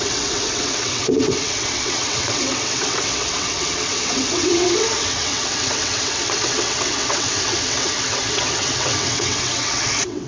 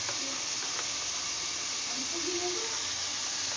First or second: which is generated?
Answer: first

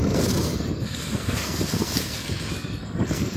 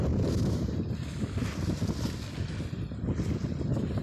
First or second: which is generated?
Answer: first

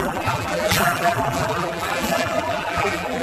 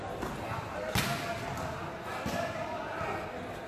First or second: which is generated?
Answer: first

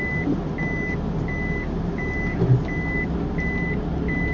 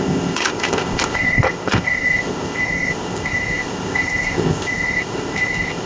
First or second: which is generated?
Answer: second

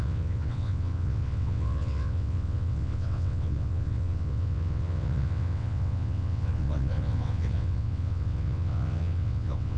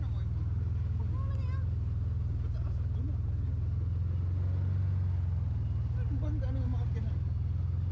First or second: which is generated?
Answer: first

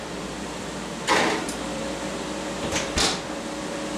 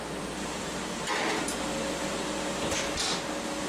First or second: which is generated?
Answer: first